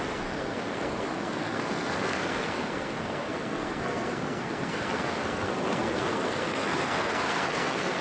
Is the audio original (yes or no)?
no